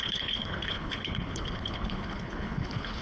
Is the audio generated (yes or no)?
yes